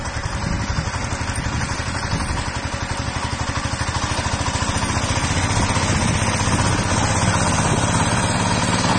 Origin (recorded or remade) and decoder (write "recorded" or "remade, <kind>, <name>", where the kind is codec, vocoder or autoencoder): recorded